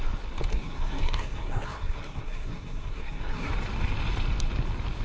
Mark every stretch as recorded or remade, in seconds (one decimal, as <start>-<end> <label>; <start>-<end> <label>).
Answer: 0.0-0.5 recorded; 0.5-3.5 remade; 3.5-5.0 recorded